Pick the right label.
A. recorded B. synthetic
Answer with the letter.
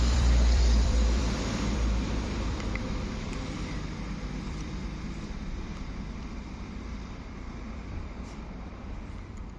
B